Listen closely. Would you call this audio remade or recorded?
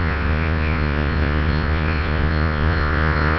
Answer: remade